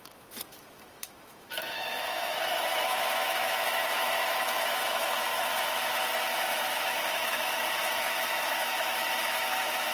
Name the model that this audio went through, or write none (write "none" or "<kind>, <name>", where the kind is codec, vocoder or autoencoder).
autoencoder, DAC-VAE